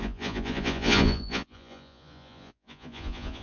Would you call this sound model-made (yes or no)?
yes